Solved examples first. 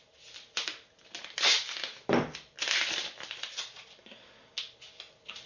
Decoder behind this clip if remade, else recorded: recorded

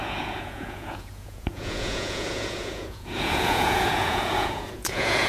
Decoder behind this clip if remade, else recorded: remade, vocoder, Vocos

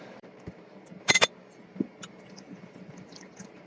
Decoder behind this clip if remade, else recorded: remade, vocoder, BigVGAN v2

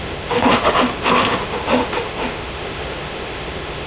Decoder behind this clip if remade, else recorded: remade, autoencoder, DAC-VAE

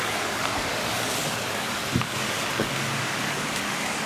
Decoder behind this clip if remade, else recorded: remade, codec, DAC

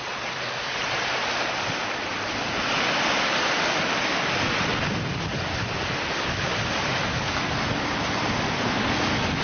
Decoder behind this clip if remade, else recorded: recorded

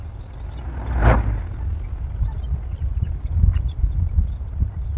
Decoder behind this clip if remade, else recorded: recorded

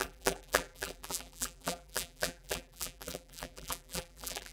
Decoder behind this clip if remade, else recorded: remade, vocoder, BigVGAN v2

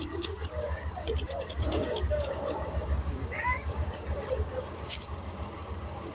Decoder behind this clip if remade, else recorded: remade, codec, DAC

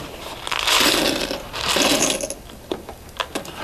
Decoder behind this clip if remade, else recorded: recorded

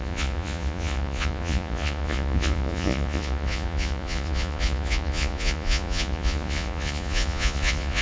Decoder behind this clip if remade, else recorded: remade, vocoder, Vocos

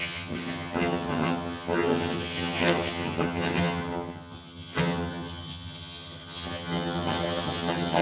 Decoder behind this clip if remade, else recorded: remade, vocoder, HiFi-GAN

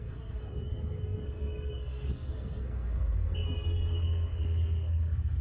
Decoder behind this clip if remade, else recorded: remade, codec, SNAC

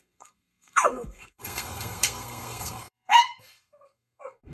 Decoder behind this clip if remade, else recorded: remade, codec, SNAC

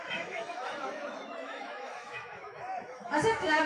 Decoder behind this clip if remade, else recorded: remade, autoencoder, DAC-VAE